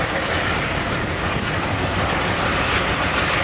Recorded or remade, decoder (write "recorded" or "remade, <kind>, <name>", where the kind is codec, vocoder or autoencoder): recorded